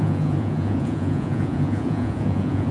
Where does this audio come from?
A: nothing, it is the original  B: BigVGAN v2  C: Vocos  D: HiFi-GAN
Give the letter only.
C